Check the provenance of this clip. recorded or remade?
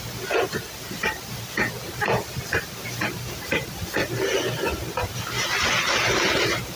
recorded